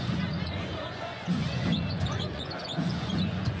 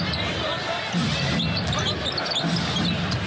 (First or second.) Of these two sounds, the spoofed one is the first